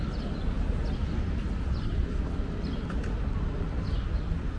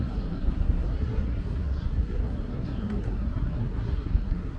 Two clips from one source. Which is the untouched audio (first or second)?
first